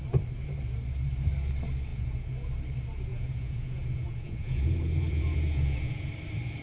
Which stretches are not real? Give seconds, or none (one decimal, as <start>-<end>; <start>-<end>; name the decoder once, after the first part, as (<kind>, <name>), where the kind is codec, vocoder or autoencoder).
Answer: 1.9-2.5 (vocoder, Vocos); 3.1-6.1